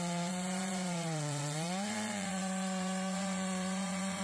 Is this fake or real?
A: fake